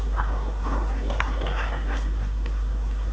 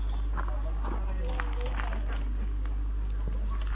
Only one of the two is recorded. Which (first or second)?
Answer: second